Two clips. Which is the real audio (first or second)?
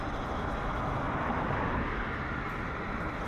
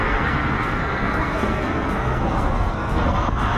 first